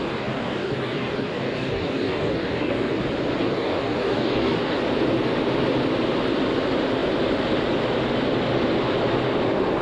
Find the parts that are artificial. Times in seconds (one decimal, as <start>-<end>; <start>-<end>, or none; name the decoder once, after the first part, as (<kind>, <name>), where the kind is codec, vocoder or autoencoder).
0.0-3.0 (codec, DAC); 3.4-4.8